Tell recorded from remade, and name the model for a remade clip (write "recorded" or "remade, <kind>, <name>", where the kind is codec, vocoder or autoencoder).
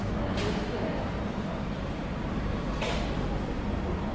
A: remade, vocoder, BigVGAN v2